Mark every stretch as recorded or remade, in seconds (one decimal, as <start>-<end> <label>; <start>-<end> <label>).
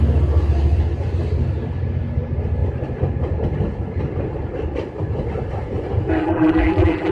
0.0-6.2 recorded; 6.2-7.1 remade